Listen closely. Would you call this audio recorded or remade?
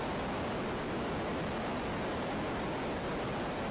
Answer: recorded